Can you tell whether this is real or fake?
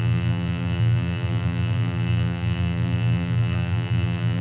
fake